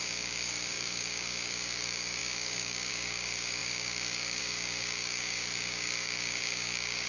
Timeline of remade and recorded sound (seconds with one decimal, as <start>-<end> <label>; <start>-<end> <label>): 0.0-7.1 remade